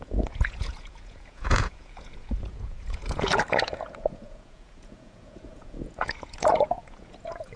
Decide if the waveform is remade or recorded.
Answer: remade